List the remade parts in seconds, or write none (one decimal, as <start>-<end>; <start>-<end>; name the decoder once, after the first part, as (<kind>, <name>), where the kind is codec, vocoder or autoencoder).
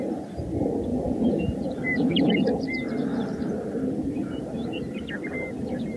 0.9-2.3 (vocoder, BigVGAN v2); 3.0-5.1